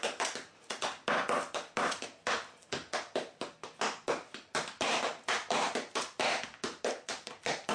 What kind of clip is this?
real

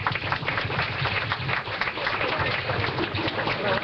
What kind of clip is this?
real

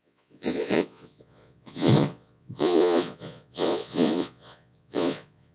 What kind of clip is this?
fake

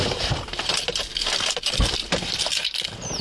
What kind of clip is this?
real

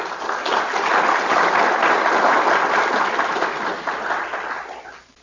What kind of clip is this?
real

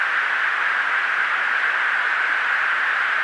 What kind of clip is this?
real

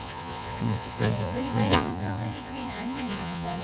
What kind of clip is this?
fake